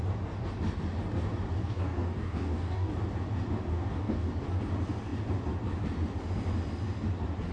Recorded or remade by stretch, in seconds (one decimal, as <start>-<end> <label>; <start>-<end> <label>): 0.0-1.6 recorded; 1.6-2.9 remade; 2.9-3.7 recorded; 3.7-4.3 remade; 4.3-7.5 recorded